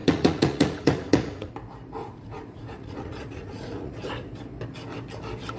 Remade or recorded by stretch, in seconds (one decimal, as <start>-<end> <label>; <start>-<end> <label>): 0.0-1.5 remade; 1.5-2.0 recorded; 2.0-3.9 remade; 3.9-5.6 recorded